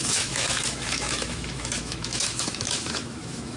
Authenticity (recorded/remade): remade